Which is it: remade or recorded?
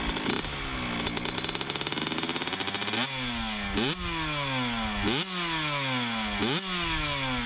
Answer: recorded